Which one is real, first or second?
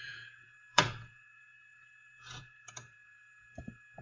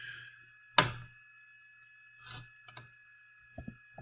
second